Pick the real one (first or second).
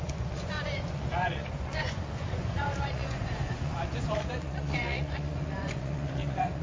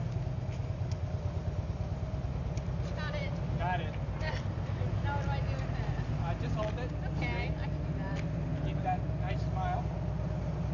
second